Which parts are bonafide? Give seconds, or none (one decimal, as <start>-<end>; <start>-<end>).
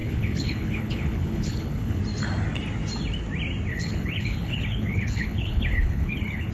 2.0-3.7